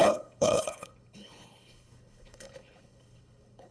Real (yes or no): no